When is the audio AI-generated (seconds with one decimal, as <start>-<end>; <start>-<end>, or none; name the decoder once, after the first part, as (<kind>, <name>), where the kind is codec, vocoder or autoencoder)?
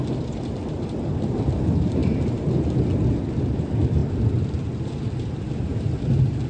none